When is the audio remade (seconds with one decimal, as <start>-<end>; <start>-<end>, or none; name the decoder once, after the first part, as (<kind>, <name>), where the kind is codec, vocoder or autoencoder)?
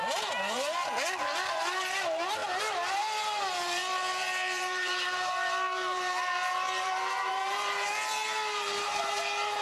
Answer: 0.0-9.6 (vocoder, BigVGAN v2)